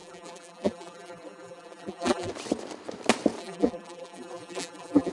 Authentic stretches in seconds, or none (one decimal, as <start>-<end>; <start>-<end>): 2.3-3.4

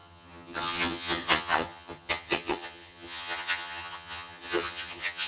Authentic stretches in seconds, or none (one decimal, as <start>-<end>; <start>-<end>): none

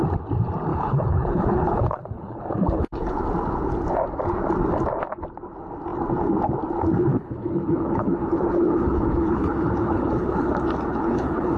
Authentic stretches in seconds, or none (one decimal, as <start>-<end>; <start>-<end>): 0.0-0.7; 3.2-7.1; 10.5-10.9

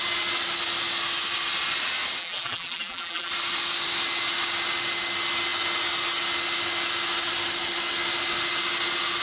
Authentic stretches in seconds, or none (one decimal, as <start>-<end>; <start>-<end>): 0.0-2.2; 3.3-9.2

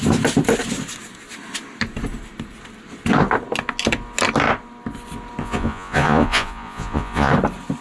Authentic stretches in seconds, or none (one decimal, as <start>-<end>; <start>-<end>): 0.0-5.4; 7.3-7.8